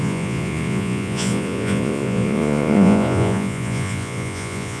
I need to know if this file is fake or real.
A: fake